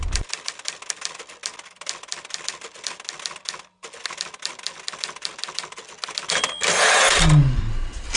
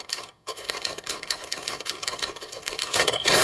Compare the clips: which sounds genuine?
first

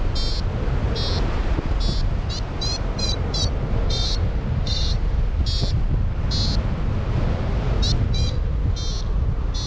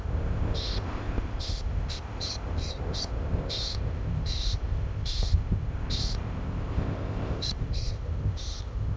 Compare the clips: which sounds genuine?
first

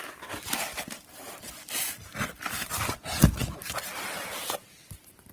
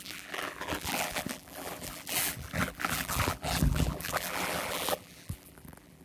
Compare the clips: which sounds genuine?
first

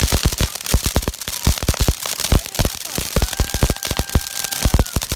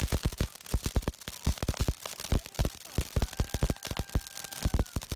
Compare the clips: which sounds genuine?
second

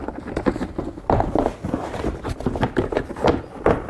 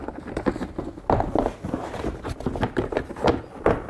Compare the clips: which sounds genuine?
second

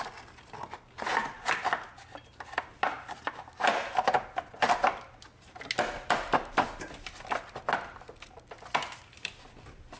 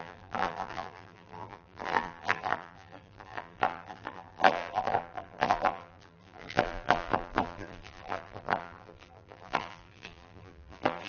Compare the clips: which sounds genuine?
first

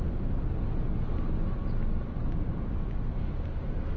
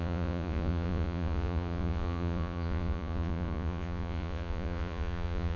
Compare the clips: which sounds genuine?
first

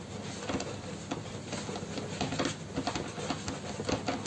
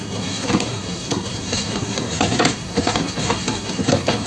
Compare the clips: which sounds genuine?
first